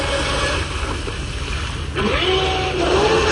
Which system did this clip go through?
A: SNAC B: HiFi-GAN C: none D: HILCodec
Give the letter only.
C